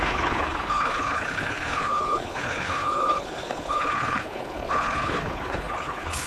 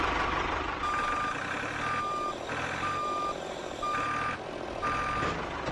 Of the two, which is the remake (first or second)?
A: first